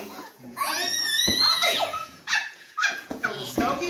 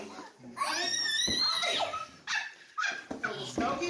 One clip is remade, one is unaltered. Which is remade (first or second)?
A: first